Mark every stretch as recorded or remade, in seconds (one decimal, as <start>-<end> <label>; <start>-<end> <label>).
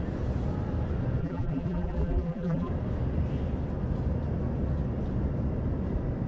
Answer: 0.0-1.2 recorded; 1.2-2.7 remade; 2.7-6.3 recorded